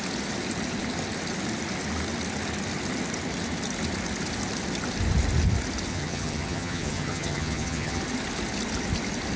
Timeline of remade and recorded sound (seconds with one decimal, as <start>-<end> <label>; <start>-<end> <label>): 0.0-5.9 recorded; 5.9-8.0 remade; 8.0-9.4 recorded